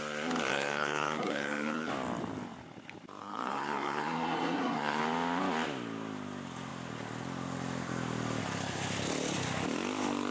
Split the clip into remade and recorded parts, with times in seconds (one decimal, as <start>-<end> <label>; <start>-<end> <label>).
0.0-0.5 recorded; 0.5-1.9 remade; 1.9-3.2 recorded; 3.2-5.0 remade; 5.0-10.3 recorded